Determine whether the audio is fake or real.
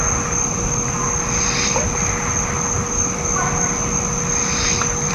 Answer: real